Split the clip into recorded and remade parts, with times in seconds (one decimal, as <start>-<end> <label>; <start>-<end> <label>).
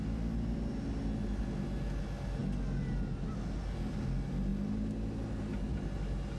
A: 0.0-6.4 recorded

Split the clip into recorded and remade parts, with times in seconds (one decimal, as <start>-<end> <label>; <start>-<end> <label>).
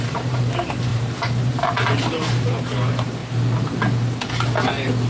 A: 0.0-3.2 remade; 3.2-5.1 recorded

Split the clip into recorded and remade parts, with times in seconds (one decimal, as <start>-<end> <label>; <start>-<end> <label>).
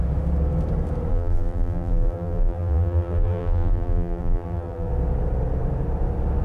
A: 0.0-1.1 recorded; 1.1-4.9 remade; 4.9-6.4 recorded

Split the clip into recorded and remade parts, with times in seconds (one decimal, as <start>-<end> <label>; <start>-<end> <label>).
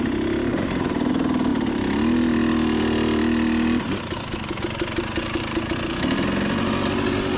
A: 0.0-0.5 recorded; 0.5-1.1 remade; 1.1-7.4 recorded